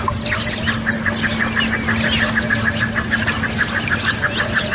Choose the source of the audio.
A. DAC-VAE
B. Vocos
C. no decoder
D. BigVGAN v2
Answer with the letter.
C